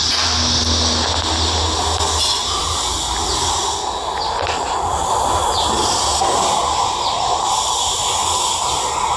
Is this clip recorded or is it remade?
recorded